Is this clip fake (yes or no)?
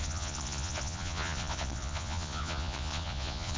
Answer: yes